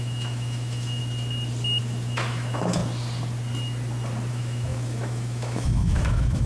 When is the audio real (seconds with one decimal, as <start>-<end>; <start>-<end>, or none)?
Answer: 1.0-1.8; 2.8-4.3